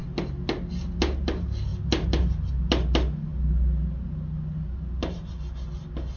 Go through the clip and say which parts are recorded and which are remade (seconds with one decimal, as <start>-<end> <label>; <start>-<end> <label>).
0.0-6.2 recorded

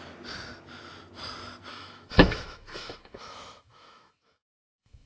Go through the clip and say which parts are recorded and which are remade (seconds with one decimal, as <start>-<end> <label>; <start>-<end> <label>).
0.0-1.7 recorded; 1.7-5.1 remade

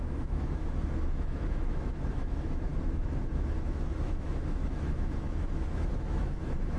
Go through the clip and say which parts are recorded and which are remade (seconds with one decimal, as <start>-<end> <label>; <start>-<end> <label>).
0.0-6.8 remade

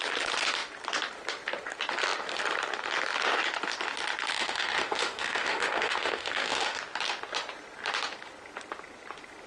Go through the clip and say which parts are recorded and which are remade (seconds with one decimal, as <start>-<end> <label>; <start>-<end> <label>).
0.0-4.3 recorded; 4.3-6.8 remade; 6.8-9.5 recorded

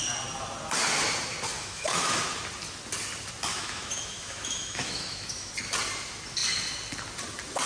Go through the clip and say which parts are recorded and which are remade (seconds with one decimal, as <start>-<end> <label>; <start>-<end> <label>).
0.0-1.5 recorded; 1.5-2.2 remade; 2.2-3.5 recorded; 3.5-5.5 remade; 5.5-7.7 recorded

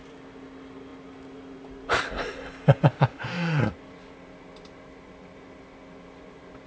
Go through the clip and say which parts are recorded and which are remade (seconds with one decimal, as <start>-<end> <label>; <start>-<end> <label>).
0.0-2.9 recorded; 2.9-3.6 remade; 3.6-6.7 recorded